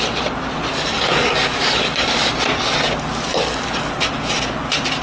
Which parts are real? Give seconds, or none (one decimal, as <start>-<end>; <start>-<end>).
0.0-0.7; 2.3-3.3; 3.9-5.0